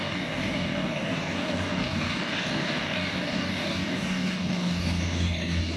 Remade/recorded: remade